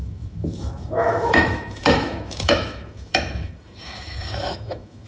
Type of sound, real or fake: fake